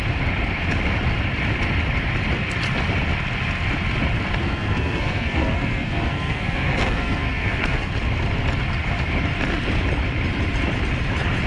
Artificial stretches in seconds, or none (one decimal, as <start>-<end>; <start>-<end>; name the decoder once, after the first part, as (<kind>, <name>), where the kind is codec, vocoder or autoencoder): 4.4-7.9 (codec, SNAC)